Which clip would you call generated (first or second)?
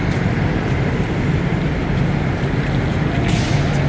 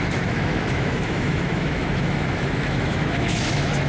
second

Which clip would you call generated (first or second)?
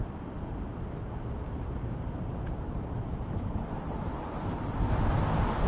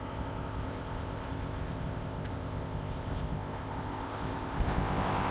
second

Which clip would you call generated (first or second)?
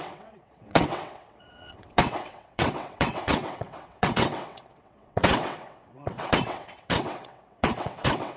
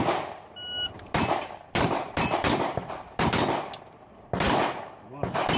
first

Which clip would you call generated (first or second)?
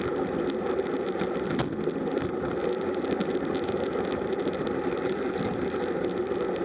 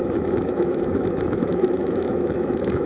second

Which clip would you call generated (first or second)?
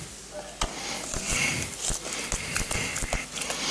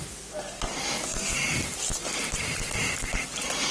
second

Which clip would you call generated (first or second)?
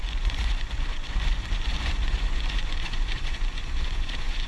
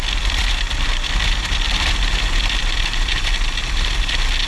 first